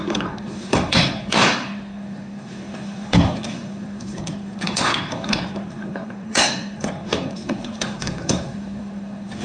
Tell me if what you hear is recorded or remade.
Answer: remade